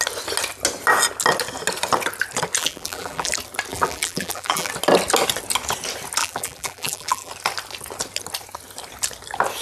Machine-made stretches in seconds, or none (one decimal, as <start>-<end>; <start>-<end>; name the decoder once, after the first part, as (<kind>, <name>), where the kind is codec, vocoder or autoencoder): 2.6-3.3 (vocoder, BigVGAN v2); 3.7-4.7; 6.2-7.3